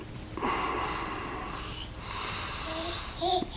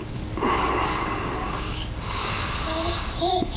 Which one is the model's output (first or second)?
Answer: second